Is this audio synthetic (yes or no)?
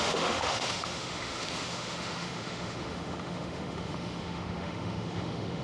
yes